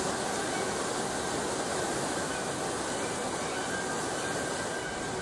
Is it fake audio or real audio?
real